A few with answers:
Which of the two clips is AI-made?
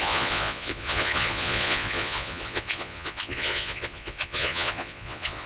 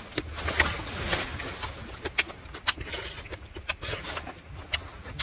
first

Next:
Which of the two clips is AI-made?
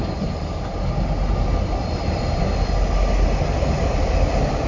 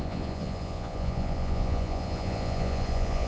second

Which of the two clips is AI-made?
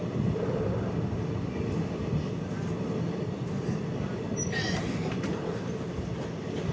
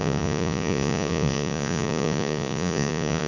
second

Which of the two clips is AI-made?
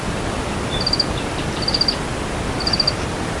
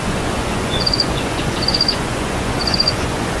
second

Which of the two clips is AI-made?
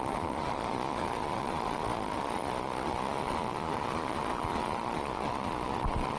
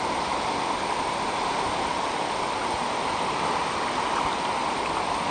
first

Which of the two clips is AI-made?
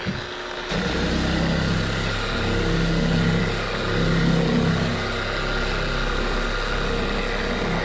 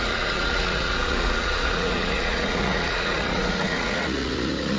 second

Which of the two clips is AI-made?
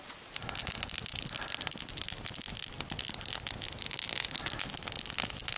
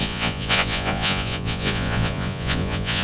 second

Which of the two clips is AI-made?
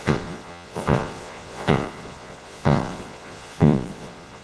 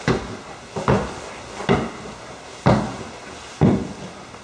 first